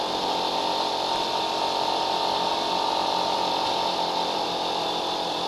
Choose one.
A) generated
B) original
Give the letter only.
A